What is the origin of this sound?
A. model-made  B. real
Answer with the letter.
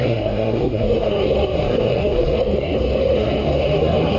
A